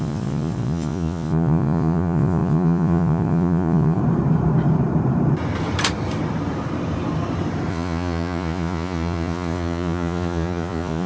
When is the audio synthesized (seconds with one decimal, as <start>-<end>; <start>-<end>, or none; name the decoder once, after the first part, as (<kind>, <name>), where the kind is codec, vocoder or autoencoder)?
0.0-4.0 (vocoder, Vocos); 7.7-11.1